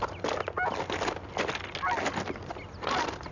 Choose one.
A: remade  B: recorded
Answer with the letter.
B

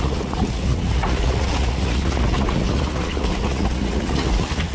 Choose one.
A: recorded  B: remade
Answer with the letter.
B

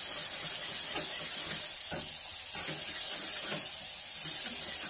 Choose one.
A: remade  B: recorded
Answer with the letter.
B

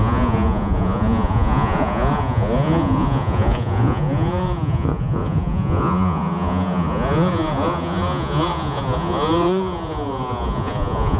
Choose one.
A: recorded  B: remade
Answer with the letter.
B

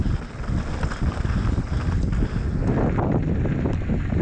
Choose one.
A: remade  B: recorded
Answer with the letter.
B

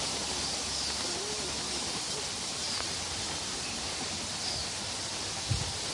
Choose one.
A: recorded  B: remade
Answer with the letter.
A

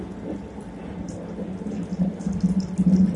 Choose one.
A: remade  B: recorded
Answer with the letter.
B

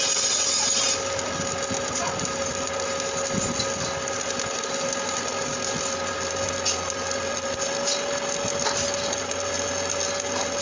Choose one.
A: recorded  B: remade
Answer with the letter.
A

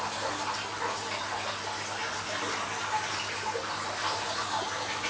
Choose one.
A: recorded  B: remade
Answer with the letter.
A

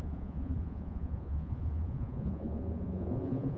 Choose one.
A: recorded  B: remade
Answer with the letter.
B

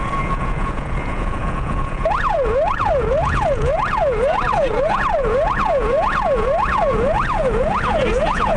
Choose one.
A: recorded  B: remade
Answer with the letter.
B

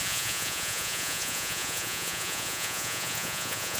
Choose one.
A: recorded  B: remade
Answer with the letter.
B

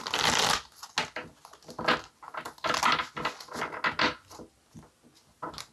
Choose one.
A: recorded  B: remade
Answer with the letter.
A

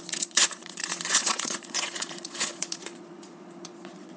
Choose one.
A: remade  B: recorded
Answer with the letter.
A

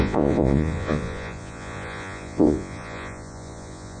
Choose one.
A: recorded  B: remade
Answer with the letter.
B